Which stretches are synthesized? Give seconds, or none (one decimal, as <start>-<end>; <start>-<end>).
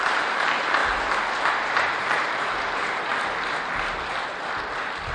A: 0.0-0.8; 1.5-3.1